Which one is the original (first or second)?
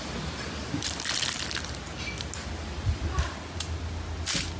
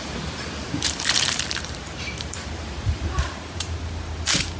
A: first